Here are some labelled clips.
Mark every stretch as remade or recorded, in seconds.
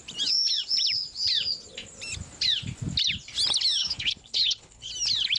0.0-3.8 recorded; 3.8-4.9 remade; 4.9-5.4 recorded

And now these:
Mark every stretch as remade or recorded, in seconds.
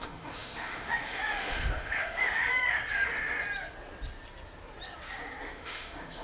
0.0-2.4 remade; 2.4-5.4 recorded; 5.4-6.2 remade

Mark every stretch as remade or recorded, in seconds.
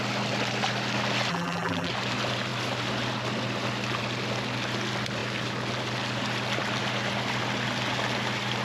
0.0-1.3 recorded; 1.3-1.9 remade; 1.9-8.6 recorded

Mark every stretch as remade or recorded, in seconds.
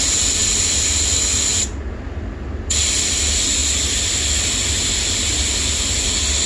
0.0-6.5 recorded